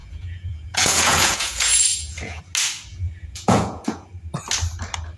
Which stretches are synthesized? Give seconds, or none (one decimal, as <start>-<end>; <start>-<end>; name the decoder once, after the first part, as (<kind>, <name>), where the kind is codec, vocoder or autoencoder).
0.0-2.4 (vocoder, Vocos); 2.9-4.1